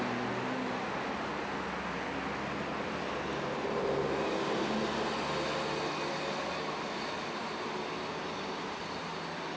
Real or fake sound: real